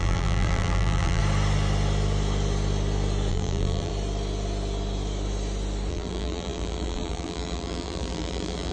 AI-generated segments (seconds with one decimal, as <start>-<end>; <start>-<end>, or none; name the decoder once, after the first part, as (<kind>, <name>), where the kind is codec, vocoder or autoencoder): 0.0-1.2 (vocoder, BigVGAN v2); 3.3-3.9; 5.9-8.7